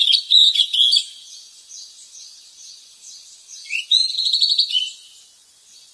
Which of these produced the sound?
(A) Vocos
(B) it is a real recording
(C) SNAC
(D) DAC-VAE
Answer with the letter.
A